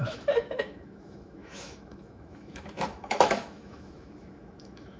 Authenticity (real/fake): fake